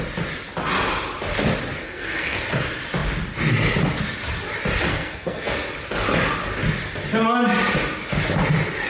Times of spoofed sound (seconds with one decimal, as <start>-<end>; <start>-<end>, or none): 1.8-2.4; 4.9-5.5